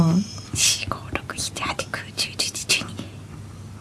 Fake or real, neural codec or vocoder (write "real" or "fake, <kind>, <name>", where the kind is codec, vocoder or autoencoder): real